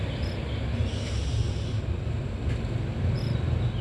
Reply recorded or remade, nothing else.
recorded